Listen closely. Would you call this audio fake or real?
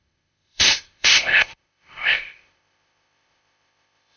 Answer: fake